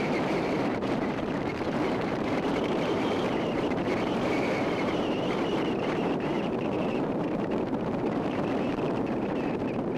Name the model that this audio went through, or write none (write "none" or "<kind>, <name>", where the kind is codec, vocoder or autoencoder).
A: vocoder, BigVGAN v2